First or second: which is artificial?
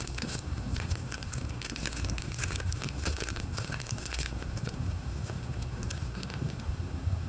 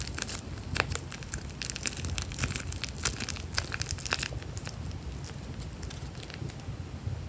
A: first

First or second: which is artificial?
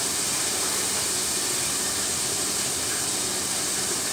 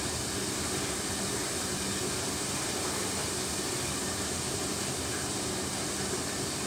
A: first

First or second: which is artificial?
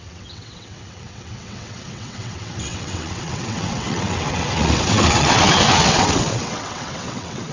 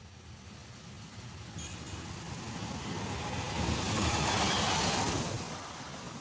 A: first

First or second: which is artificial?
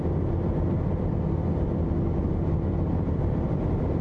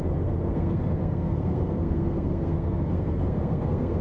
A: second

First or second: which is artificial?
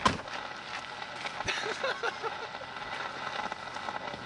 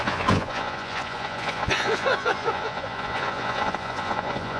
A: second